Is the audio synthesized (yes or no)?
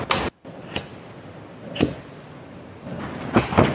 no